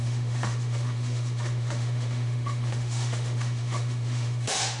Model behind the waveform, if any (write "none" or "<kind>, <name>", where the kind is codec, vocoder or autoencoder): autoencoder, DAC-VAE